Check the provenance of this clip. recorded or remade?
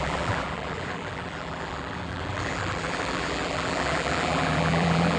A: remade